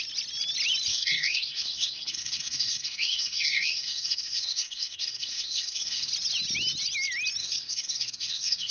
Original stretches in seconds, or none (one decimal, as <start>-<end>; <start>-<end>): 0.0-0.9; 6.1-7.4